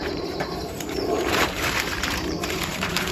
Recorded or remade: remade